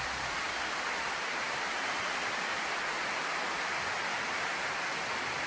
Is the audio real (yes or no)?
yes